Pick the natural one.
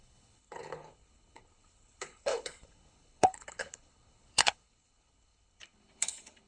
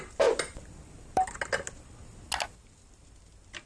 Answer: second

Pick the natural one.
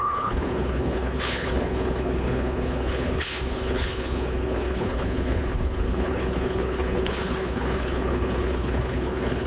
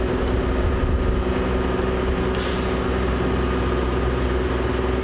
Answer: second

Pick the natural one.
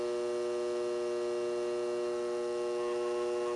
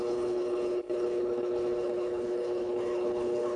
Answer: first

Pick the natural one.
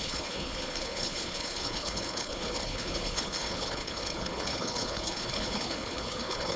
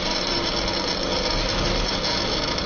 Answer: second